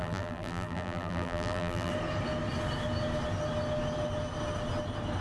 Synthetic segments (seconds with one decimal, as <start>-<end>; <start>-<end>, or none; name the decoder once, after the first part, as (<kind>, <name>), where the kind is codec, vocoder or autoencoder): 0.0-1.9 (vocoder, BigVGAN v2)